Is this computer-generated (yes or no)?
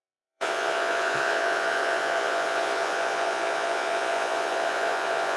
yes